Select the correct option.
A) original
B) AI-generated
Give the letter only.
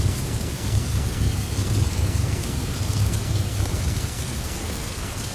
B